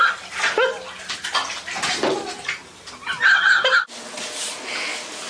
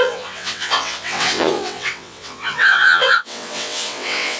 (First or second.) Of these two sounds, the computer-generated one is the second